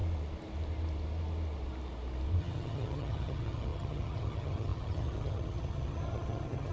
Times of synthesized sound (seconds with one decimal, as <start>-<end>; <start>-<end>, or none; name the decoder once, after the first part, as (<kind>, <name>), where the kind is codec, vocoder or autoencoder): 2.4-6.7 (vocoder, HiFi-GAN)